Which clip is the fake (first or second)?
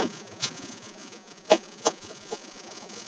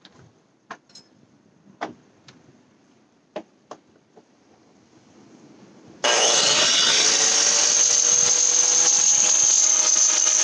first